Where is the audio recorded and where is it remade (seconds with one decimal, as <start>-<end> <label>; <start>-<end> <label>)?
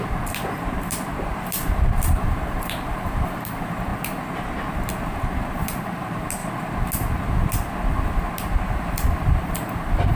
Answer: 0.0-3.9 remade; 3.9-5.2 recorded; 5.2-6.4 remade; 6.4-9.4 recorded; 9.4-10.2 remade